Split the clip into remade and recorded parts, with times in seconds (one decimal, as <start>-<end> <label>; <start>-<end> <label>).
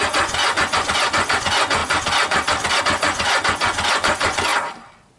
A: 0.0-1.8 remade; 1.8-2.8 recorded; 2.8-4.5 remade; 4.5-5.2 recorded